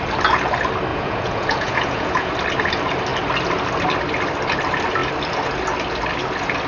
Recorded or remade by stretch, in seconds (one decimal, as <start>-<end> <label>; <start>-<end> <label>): 0.0-0.9 recorded; 0.9-2.3 remade; 2.3-6.7 recorded